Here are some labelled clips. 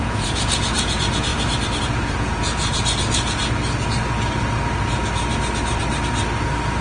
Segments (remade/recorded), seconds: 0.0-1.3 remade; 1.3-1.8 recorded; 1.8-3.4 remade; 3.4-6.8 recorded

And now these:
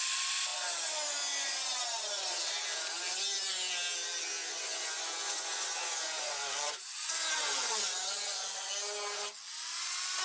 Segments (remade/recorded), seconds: 0.0-4.4 recorded; 4.4-8.7 remade; 8.7-10.2 recorded